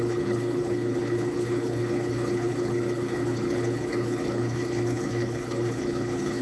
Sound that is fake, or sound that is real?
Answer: fake